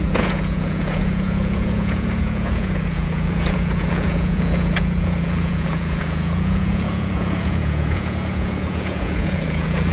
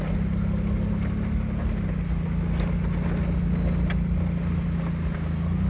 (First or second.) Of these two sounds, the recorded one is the second